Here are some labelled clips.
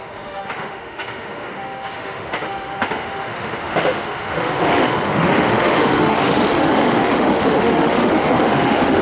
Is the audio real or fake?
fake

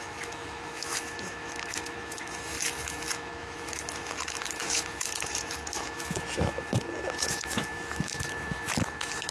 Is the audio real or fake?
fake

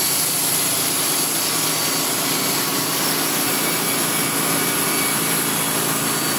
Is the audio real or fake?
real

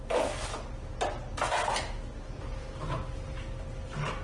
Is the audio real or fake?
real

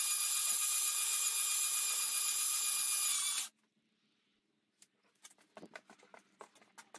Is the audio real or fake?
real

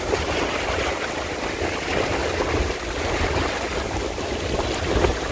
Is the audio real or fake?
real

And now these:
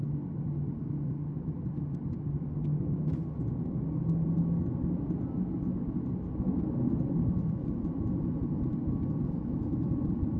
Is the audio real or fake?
real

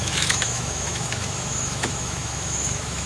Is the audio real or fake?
fake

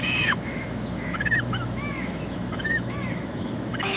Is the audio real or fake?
fake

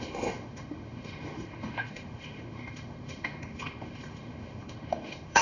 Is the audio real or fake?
fake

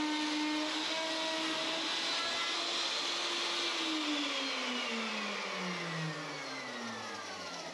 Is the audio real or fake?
real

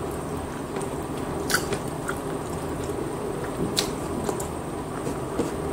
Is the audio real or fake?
real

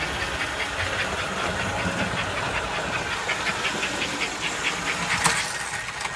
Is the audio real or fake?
real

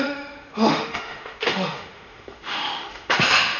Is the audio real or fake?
fake